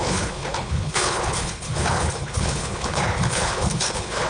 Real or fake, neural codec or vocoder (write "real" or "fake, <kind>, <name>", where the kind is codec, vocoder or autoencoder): fake, codec, HILCodec